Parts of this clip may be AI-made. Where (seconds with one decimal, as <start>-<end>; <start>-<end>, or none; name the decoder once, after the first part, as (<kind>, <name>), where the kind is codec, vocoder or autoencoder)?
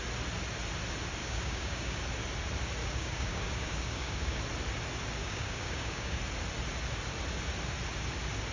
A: 1.2-2.0 (codec, DAC); 2.8-4.4; 5.2-6.2